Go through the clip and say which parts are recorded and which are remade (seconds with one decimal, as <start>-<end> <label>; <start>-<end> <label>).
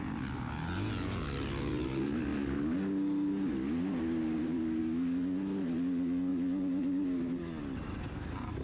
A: 0.0-8.6 recorded